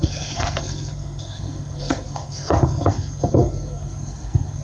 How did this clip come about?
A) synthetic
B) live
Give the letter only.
A